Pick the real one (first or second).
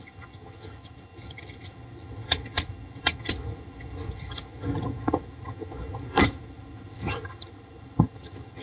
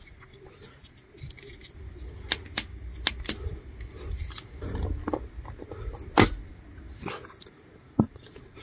second